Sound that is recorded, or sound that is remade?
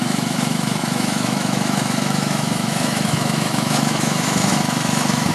remade